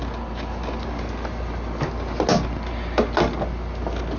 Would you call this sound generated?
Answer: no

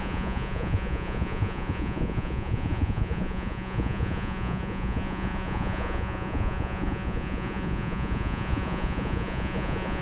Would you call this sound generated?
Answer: yes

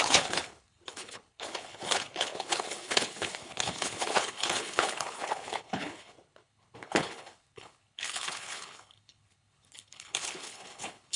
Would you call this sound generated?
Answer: yes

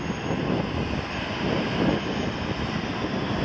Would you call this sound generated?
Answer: no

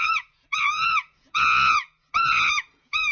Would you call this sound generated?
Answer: yes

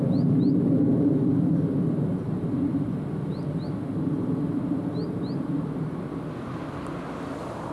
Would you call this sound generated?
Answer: no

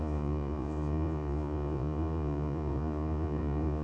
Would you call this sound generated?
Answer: yes